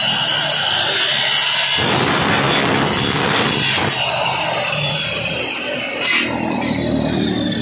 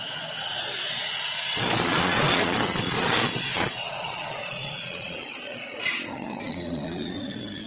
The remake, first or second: second